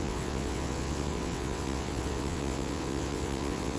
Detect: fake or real fake